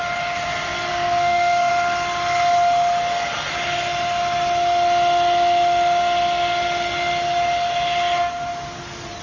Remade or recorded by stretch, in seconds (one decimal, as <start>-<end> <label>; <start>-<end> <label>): 0.0-0.9 recorded; 0.9-1.7 remade; 1.7-9.2 recorded